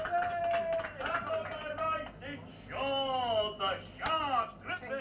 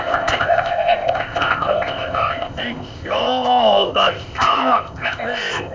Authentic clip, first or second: first